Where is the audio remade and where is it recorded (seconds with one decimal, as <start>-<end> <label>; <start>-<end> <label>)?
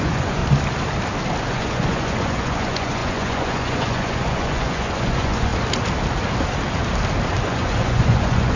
0.0-0.4 remade; 0.4-1.5 recorded; 1.5-5.5 remade; 5.5-7.4 recorded; 7.4-8.6 remade